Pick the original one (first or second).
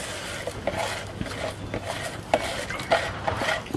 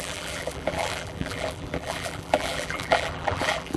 first